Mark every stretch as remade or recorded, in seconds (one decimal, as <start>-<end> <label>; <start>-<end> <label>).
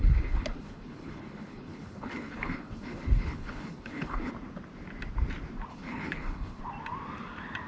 0.0-4.3 remade; 4.3-5.7 recorded; 5.7-6.6 remade; 6.6-7.7 recorded